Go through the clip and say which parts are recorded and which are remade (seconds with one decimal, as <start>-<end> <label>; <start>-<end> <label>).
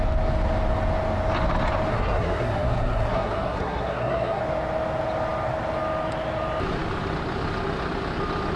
0.0-1.9 recorded; 1.9-4.4 remade; 4.4-8.6 recorded